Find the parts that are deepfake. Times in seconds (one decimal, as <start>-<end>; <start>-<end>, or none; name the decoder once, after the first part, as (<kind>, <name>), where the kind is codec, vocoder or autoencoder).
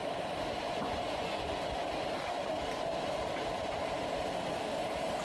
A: 0.6-1.8 (vocoder, Vocos)